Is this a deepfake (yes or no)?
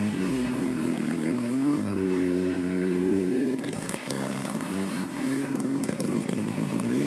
yes